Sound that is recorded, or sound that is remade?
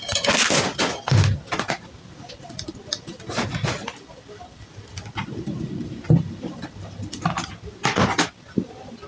recorded